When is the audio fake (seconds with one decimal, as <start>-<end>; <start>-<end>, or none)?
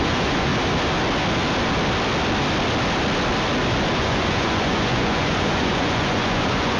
0.0-0.5; 4.0-6.8